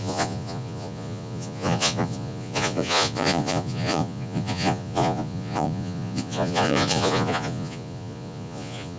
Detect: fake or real fake